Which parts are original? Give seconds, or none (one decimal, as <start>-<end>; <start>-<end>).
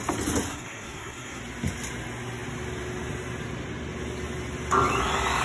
0.0-0.5; 1.4-5.4